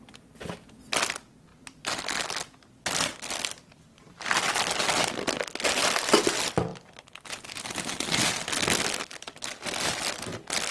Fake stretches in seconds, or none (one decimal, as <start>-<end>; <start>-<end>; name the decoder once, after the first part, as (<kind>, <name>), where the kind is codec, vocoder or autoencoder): none